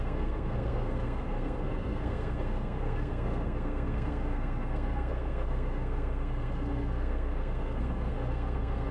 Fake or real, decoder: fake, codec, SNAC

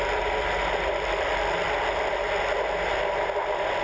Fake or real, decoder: real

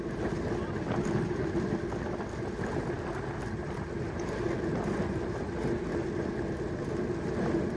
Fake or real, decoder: real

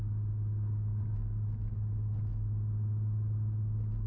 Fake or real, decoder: real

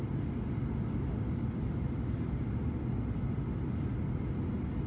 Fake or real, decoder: real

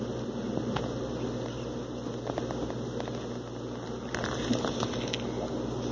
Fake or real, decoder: real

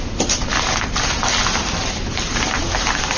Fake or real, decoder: real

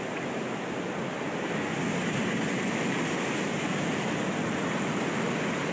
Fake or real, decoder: real